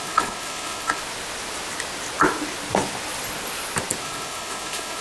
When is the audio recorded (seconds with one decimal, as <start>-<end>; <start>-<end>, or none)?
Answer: 1.0-4.0